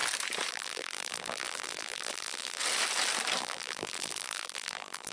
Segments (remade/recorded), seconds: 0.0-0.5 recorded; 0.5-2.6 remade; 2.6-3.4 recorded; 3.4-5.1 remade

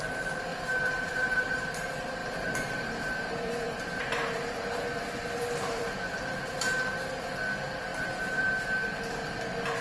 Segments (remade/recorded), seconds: 0.0-0.5 recorded; 0.5-1.7 remade; 1.7-2.2 recorded; 2.2-6.2 remade; 6.2-7.9 recorded; 7.9-8.5 remade; 8.5-9.8 recorded

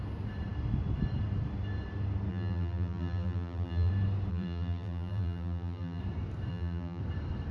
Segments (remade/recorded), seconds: 0.0-2.3 recorded; 2.3-3.9 remade; 3.9-4.3 recorded; 4.3-6.0 remade; 6.0-6.5 recorded; 6.5-7.0 remade; 7.0-7.5 recorded

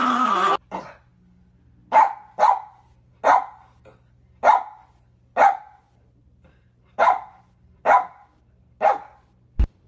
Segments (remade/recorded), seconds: 0.0-9.9 recorded

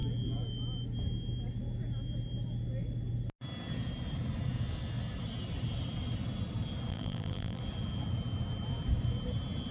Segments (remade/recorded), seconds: 0.0-6.9 recorded; 6.9-7.6 remade; 7.6-9.7 recorded

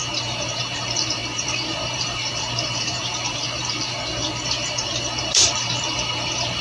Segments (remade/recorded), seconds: 0.0-6.6 remade